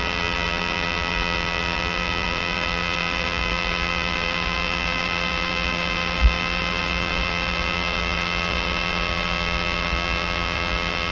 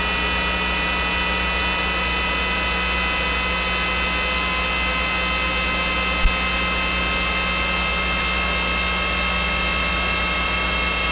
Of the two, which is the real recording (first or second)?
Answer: second